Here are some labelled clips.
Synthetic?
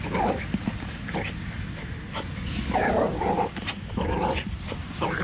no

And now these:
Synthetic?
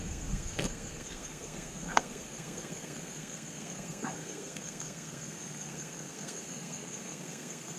yes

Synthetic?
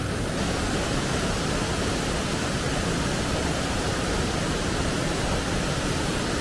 no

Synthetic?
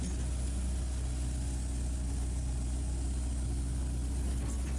no